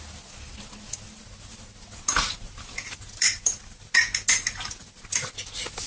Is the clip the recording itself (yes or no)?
yes